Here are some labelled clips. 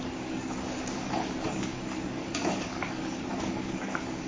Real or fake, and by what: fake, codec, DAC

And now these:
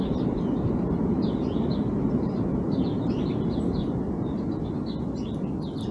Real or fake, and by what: real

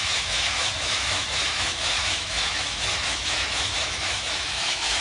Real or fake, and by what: fake, autoencoder, DAC-VAE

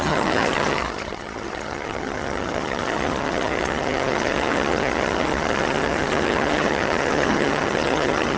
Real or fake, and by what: fake, vocoder, HiFi-GAN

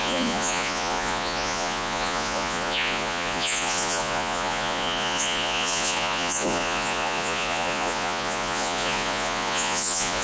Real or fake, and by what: fake, vocoder, Vocos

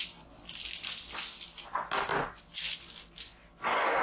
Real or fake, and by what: real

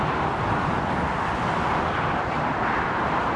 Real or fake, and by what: real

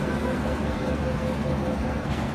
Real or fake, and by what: fake, codec, SNAC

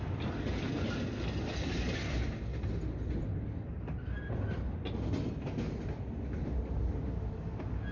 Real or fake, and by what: real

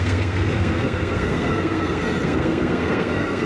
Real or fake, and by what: fake, codec, SNAC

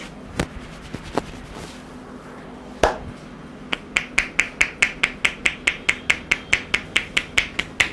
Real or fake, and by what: real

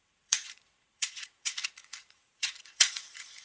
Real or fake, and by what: fake, vocoder, Vocos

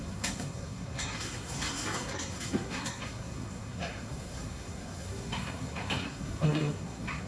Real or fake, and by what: fake, codec, SNAC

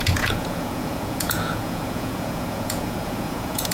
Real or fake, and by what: fake, vocoder, Vocos